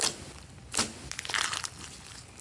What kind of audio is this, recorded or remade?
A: recorded